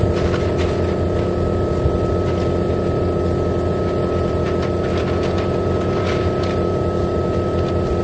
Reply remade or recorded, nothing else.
recorded